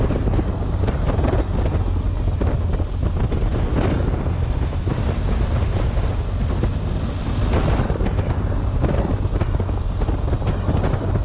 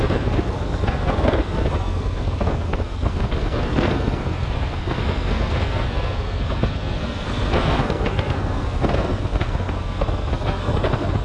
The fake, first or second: second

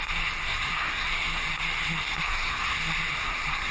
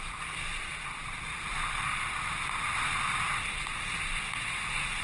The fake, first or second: first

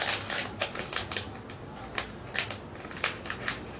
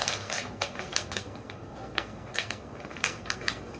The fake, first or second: second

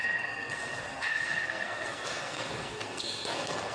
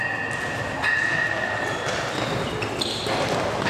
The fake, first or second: first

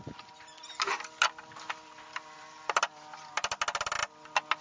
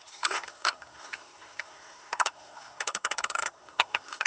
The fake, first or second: second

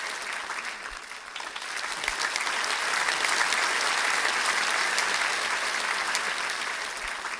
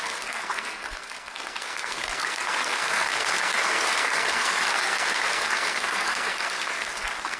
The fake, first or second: second